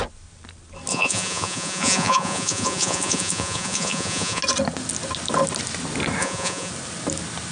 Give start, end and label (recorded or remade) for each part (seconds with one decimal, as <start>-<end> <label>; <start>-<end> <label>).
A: 0.0-0.9 recorded; 0.9-4.4 remade; 4.4-6.2 recorded; 6.2-6.7 remade; 6.7-7.5 recorded